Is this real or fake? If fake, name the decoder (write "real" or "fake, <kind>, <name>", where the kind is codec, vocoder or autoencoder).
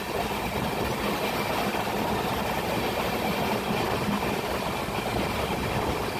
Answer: real